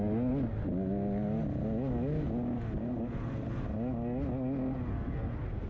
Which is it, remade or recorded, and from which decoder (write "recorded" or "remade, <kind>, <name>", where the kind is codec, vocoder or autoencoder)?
recorded